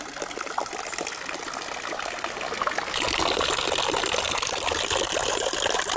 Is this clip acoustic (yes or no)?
yes